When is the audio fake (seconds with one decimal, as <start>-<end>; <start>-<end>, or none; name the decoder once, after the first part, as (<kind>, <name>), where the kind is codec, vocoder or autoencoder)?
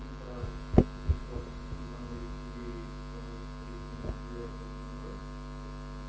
1.2-1.8 (vocoder, Vocos)